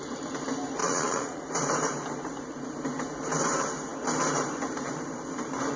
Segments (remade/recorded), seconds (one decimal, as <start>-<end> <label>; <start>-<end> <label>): 0.0-0.8 recorded; 0.8-1.4 remade; 1.4-5.8 recorded